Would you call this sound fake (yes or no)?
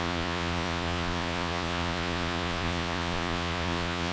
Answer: yes